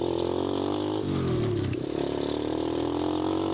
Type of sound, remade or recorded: recorded